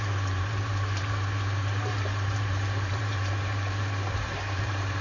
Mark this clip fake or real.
fake